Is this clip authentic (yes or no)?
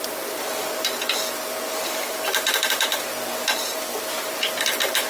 yes